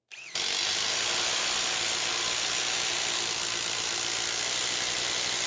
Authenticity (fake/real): real